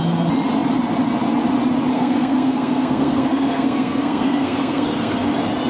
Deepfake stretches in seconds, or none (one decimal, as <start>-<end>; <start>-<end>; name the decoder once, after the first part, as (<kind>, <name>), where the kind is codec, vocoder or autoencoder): 1.9-5.3 (codec, SNAC)